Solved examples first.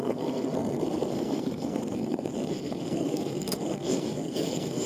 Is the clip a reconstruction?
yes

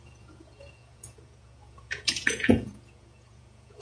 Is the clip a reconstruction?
yes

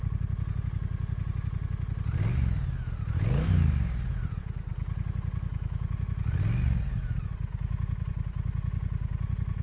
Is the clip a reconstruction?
no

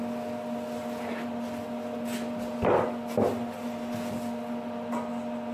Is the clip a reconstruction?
no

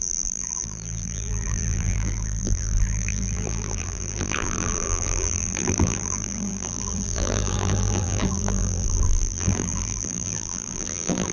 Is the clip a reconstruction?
yes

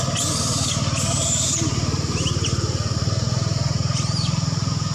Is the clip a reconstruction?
no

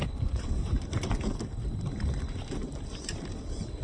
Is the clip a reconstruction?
no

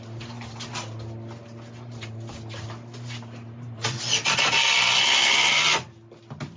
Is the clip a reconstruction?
no